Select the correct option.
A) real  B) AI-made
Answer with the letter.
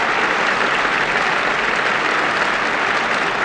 A